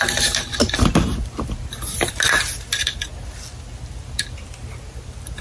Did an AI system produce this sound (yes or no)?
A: no